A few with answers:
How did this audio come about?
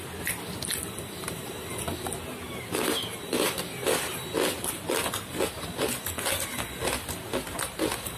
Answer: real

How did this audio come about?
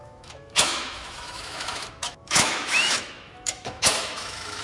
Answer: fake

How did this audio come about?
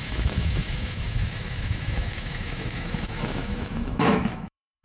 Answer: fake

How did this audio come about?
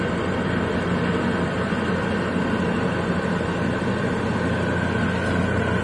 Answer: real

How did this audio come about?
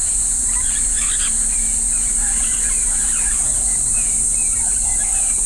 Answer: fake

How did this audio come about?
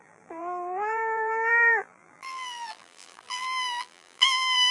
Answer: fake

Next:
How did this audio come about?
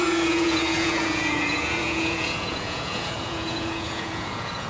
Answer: fake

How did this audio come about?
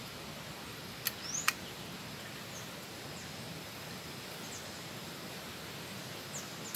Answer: real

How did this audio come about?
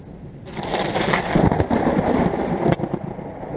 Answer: real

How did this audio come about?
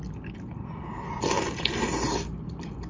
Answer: real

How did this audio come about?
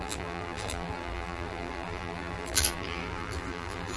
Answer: fake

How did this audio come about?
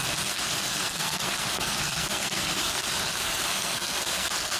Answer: fake